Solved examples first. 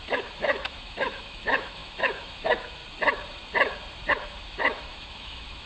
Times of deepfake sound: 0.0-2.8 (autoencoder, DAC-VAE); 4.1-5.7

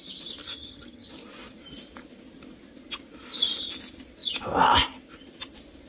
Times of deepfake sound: 0.4-1.1 (vocoder, HiFi-GAN)

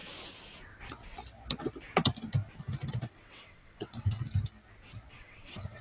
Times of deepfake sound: 2.9-4.2 (vocoder, WaveNeXt); 5.1-5.8